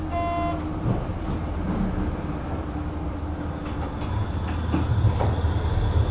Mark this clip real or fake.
real